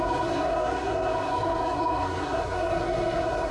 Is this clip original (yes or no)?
no